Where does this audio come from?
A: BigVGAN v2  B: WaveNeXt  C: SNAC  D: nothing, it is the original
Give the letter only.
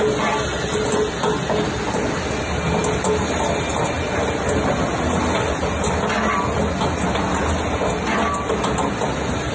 D